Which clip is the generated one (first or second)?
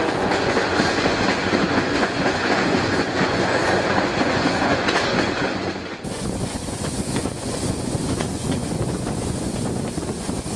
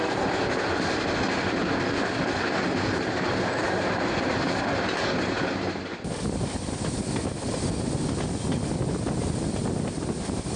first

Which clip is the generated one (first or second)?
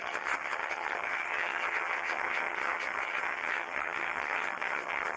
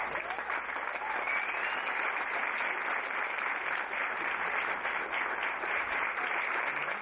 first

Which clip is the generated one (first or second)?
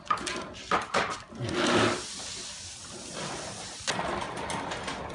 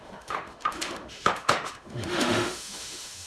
second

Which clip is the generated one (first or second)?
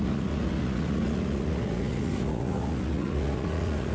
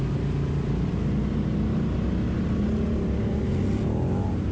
first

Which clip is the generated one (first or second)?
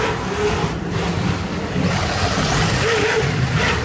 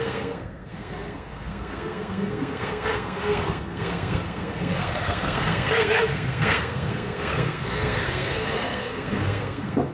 second